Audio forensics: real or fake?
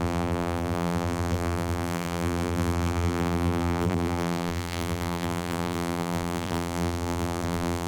fake